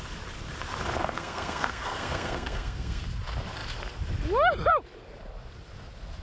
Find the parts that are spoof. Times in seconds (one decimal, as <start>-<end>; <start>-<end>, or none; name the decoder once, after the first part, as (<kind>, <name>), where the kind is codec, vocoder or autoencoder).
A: 1.0-3.0 (codec, SNAC)